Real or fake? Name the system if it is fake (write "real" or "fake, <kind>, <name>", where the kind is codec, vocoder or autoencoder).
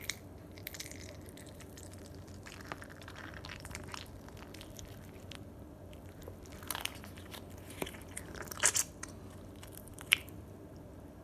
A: fake, vocoder, BigVGAN v2